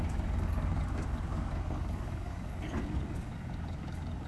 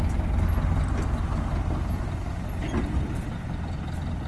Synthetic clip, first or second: first